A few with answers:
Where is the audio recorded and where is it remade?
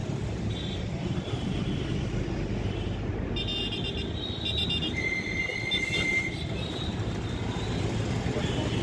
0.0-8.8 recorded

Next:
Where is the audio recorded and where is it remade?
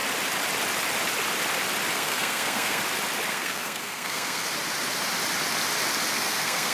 0.0-1.9 recorded; 1.9-2.8 remade; 2.8-3.3 recorded; 3.3-4.5 remade; 4.5-6.1 recorded; 6.1-6.7 remade